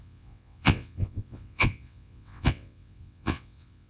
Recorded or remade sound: remade